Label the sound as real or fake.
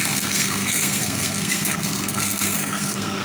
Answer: fake